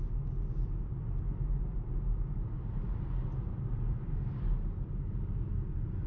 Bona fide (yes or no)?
yes